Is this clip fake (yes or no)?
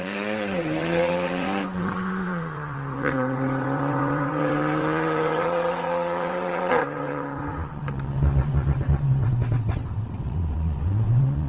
yes